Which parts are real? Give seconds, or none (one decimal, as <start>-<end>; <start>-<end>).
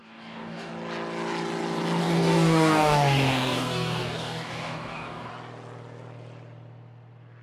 0.7-2.0; 5.3-7.4